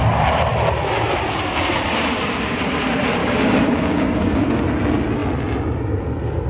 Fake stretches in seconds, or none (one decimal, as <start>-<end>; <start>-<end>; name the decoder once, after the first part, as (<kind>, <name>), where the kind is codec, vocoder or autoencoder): 3.2-4.6 (codec, DAC)